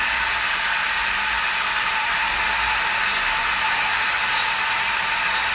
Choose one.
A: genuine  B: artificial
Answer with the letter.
A